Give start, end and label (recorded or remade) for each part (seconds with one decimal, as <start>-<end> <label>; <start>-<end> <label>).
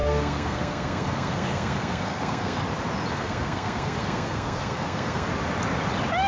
0.0-2.6 remade; 2.6-3.1 recorded; 3.1-5.3 remade; 5.3-6.3 recorded